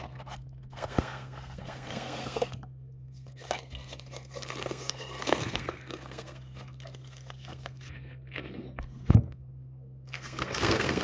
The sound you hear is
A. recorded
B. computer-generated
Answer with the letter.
B